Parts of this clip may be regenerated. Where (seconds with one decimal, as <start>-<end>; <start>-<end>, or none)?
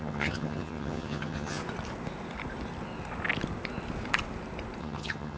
0.0-1.6; 4.8-5.4